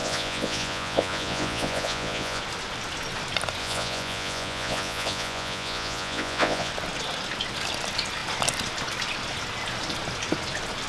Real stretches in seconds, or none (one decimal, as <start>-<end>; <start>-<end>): 2.4-3.6; 6.7-10.9